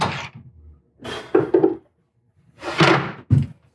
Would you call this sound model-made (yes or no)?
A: no